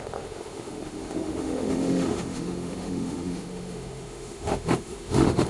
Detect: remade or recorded remade